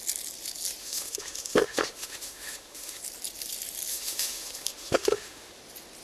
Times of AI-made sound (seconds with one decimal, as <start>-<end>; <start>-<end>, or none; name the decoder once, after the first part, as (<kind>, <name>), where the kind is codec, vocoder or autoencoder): 0.8-3.0 (autoencoder, DAC-VAE); 3.9-5.5